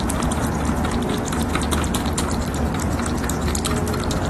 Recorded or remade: recorded